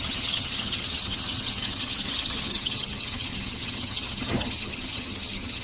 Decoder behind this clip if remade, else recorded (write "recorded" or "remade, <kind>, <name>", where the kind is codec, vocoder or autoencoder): remade, vocoder, HiFi-GAN